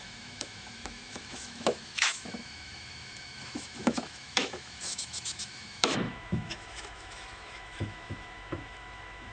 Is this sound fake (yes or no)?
yes